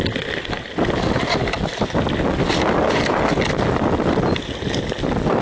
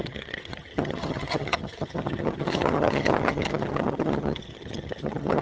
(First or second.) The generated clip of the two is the second